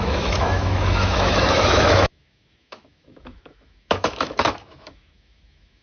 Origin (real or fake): fake